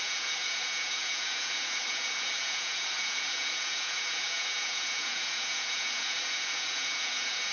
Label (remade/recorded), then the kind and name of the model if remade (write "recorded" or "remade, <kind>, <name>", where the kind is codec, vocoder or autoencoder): remade, vocoder, Vocos